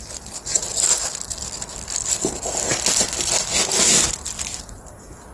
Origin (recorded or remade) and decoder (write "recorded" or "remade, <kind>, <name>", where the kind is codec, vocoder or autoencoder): recorded